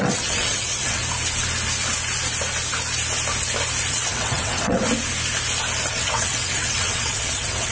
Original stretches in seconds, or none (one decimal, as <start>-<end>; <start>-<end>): 1.0-3.9; 4.8-5.9